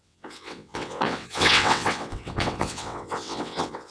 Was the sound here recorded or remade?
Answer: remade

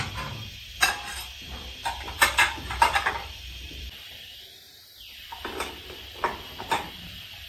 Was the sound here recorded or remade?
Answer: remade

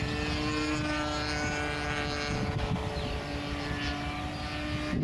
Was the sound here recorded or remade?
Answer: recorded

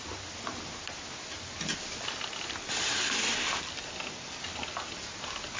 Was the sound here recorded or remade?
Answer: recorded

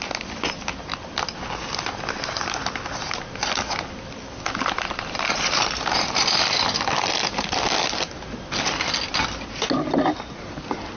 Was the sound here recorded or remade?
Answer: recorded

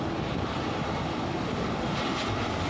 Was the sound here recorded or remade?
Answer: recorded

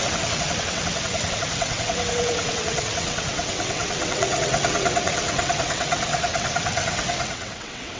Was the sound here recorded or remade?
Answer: remade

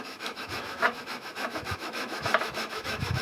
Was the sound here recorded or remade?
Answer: remade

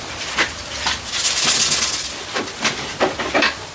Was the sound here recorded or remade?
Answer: recorded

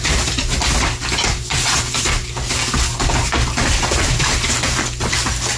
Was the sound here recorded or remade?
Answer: recorded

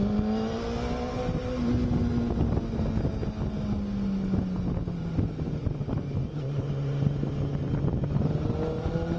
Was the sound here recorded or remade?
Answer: recorded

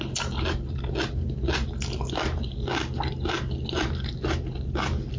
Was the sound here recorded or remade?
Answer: recorded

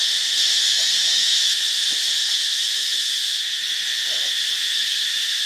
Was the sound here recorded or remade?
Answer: remade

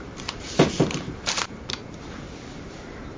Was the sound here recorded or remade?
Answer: remade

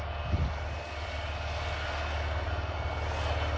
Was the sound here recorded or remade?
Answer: recorded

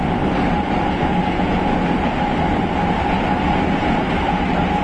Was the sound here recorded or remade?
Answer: recorded